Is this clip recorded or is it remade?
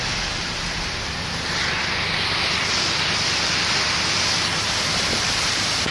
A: recorded